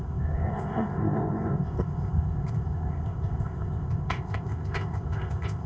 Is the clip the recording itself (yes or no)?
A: no